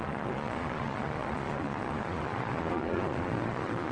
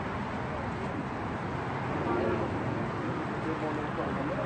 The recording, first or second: second